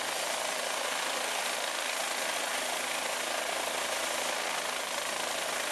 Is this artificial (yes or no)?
no